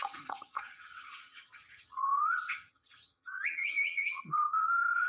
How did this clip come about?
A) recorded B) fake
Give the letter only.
B